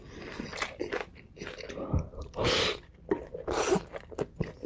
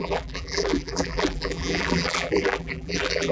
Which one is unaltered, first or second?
first